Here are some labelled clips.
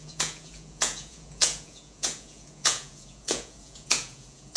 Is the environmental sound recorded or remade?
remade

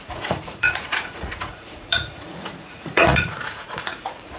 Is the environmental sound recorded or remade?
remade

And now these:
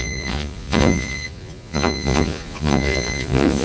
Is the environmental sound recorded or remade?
remade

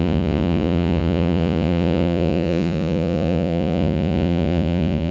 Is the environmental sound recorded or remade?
remade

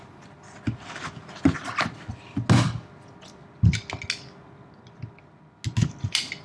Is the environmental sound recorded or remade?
recorded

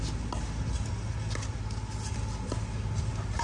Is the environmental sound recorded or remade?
recorded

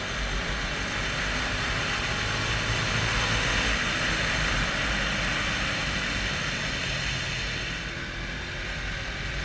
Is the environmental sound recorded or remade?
recorded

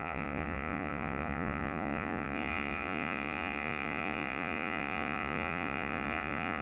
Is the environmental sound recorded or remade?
remade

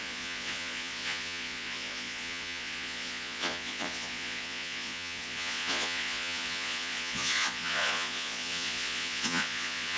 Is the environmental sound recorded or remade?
remade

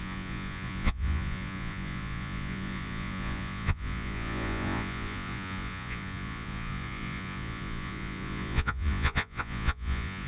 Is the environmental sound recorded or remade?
remade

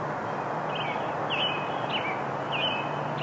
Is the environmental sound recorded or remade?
recorded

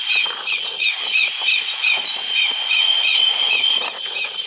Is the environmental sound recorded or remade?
remade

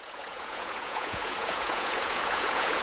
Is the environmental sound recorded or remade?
remade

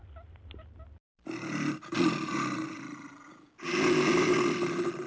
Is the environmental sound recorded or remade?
recorded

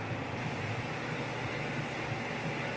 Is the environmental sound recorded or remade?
recorded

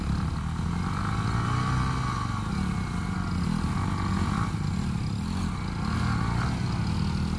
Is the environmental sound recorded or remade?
recorded